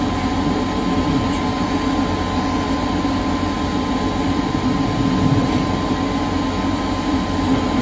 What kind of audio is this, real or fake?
real